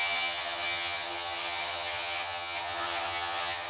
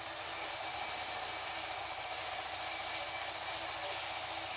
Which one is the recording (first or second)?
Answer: second